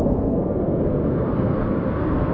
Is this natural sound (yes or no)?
no